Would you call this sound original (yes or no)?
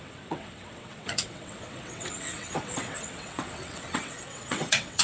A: no